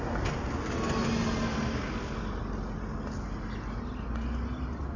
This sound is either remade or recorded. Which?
recorded